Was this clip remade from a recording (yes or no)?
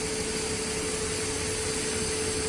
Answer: no